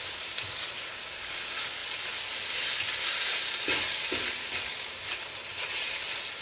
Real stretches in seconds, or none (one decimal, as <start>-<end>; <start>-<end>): 0.0-6.4